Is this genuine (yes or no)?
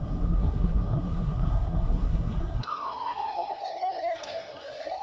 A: no